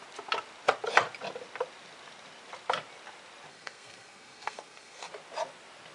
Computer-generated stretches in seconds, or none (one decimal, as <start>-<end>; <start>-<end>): 3.5-5.1